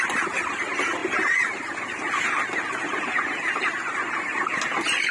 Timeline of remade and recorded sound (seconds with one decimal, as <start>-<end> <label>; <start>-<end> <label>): 0.0-5.1 recorded